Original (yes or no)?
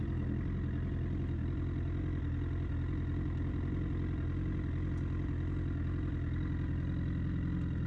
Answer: yes